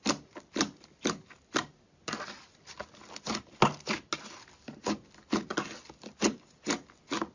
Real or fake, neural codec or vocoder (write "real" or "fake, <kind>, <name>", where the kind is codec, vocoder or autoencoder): real